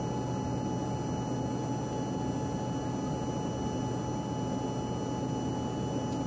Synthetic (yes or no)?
no